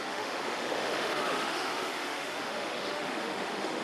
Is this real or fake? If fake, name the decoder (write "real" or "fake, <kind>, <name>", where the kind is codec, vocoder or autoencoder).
fake, autoencoder, DAC-VAE